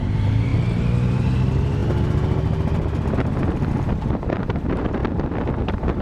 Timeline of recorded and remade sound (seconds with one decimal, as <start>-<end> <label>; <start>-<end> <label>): 0.0-0.5 remade; 0.5-1.1 recorded; 1.1-1.8 remade; 1.8-3.7 recorded; 3.7-5.0 remade; 5.0-5.6 recorded; 5.6-6.0 remade